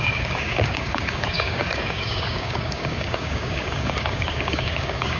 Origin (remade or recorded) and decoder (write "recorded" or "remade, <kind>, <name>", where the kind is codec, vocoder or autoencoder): remade, codec, DAC